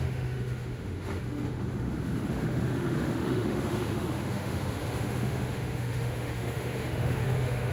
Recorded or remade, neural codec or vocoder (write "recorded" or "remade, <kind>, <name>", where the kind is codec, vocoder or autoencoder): remade, autoencoder, DAC-VAE